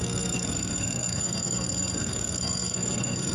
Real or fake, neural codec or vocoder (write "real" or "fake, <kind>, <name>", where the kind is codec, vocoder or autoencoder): fake, codec, SNAC